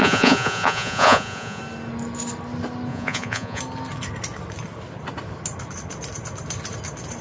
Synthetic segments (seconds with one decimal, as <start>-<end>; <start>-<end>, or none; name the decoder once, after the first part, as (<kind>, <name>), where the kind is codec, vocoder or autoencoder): 0.0-1.6 (vocoder, Vocos); 2.9-3.6